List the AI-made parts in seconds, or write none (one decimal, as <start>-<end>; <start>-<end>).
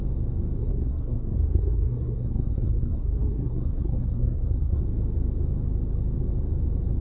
0.6-4.8